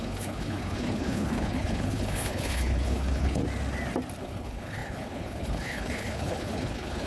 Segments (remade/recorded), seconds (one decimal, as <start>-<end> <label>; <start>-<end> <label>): 0.0-3.4 remade; 3.4-4.2 recorded; 4.2-7.1 remade